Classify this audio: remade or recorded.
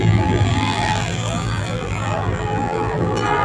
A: remade